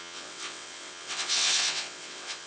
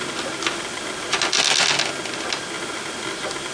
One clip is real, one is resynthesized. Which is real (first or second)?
second